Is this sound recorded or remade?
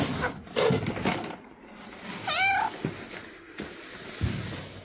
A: recorded